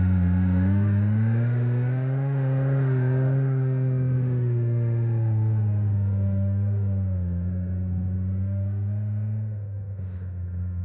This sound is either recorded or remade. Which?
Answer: remade